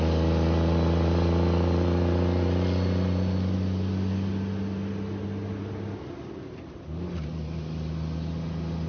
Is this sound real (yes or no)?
yes